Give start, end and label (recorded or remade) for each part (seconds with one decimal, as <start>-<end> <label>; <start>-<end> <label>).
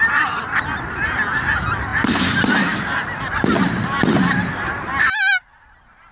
0.0-6.1 recorded